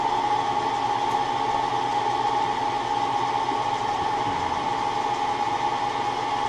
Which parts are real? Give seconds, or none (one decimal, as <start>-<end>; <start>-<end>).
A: 0.0-3.9; 4.7-6.5

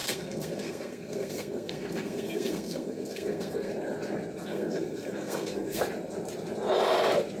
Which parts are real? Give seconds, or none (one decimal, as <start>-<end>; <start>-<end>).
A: 3.7-4.5; 5.8-7.4

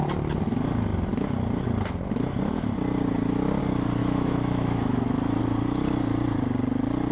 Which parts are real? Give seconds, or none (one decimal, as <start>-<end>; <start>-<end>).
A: 0.0-4.0; 5.4-7.1

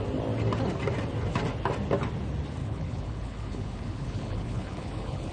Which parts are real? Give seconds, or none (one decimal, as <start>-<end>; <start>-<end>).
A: 0.0-2.6